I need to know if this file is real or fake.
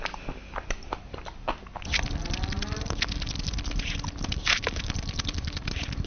real